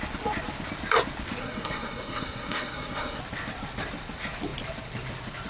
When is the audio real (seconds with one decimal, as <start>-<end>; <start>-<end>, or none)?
0.0-1.4; 3.2-5.5